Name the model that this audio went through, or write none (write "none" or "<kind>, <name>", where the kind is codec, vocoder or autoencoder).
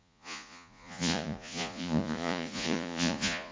vocoder, Vocos